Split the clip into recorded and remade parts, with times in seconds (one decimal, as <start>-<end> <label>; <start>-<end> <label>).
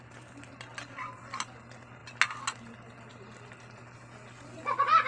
0.0-5.1 recorded